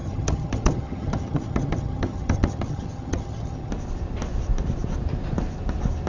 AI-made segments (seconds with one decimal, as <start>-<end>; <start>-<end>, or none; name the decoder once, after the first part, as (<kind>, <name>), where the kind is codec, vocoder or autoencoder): 0.0-3.7 (vocoder, HiFi-GAN)